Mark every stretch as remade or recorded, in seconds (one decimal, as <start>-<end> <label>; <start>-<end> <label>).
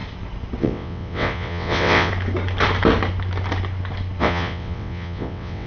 0.0-0.6 recorded; 0.6-2.1 remade; 2.1-4.2 recorded; 4.2-5.7 remade